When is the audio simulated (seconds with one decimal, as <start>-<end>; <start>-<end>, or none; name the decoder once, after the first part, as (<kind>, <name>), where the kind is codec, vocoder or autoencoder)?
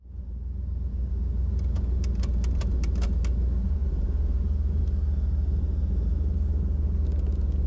none